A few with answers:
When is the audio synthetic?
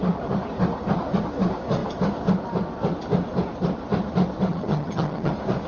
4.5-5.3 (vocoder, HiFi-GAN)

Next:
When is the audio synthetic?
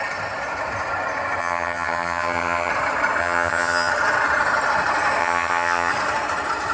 1.4-2.7 (vocoder, HiFi-GAN); 3.2-3.9; 5.2-5.9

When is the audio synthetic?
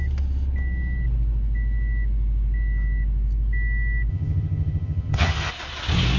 4.1-5.5 (vocoder, HiFi-GAN)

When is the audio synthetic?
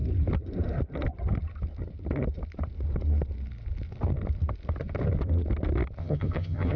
6.0-6.8 (vocoder, HiFi-GAN)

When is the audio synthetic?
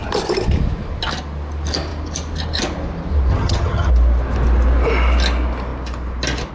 3.3-3.9 (vocoder, HiFi-GAN)